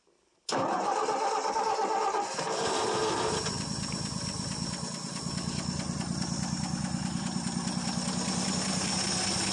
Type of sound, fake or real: real